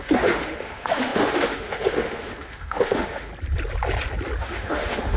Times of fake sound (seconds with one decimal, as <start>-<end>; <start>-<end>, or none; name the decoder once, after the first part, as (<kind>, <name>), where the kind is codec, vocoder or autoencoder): 0.0-3.3 (autoencoder, DAC-VAE); 4.4-5.2